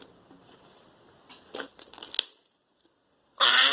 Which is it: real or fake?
fake